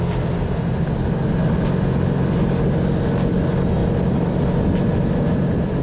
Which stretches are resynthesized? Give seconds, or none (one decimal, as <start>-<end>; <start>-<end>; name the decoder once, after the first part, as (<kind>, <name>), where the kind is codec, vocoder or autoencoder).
3.8-5.8 (vocoder, BigVGAN v2)